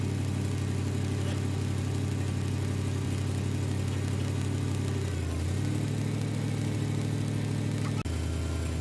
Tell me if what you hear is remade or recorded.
recorded